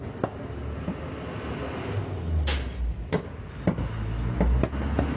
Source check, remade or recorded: recorded